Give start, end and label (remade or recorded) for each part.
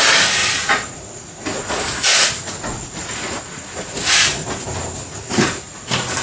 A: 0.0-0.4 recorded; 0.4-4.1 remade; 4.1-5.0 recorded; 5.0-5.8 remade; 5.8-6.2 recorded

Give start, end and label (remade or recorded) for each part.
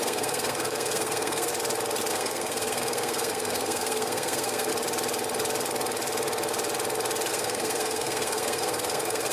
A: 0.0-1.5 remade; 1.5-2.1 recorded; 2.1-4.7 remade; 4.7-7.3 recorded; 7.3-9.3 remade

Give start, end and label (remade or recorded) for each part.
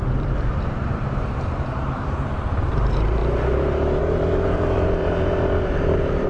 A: 0.0-3.2 remade; 3.2-4.0 recorded; 4.0-6.3 remade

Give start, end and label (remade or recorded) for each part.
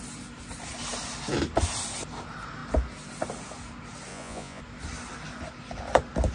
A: 0.0-4.1 recorded; 4.1-4.6 remade; 4.6-6.3 recorded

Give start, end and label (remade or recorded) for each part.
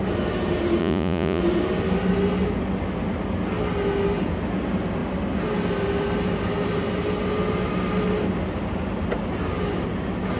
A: 0.0-0.8 recorded; 0.8-1.4 remade; 1.4-10.4 recorded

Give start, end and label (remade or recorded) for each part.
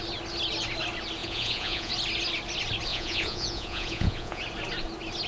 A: 0.0-1.2 recorded; 1.2-1.9 remade; 1.9-2.9 recorded; 2.9-4.4 remade; 4.4-5.3 recorded